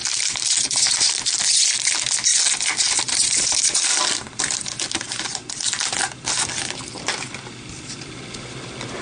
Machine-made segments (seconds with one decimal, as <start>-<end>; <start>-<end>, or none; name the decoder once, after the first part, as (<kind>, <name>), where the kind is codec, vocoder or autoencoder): 0.0-1.9 (vocoder, BigVGAN v2); 2.3-4.9